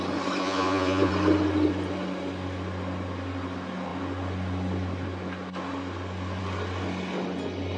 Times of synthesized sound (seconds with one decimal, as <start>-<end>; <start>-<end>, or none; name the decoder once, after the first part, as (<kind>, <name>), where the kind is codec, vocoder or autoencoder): 0.4-1.1 (vocoder, Vocos)